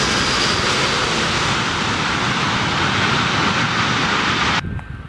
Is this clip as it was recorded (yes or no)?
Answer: yes